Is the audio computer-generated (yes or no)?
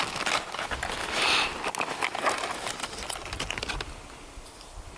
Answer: no